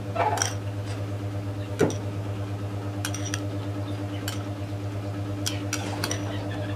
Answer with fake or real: real